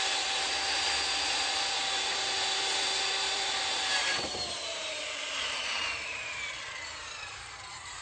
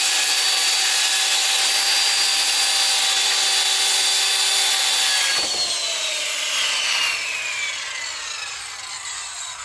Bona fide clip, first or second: second